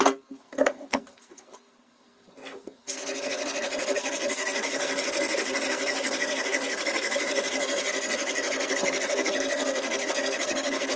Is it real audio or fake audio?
fake